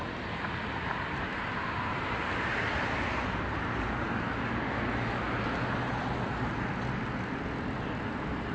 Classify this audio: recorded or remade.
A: recorded